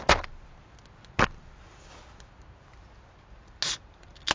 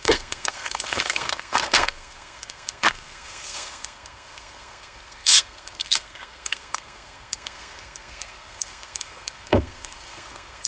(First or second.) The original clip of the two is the first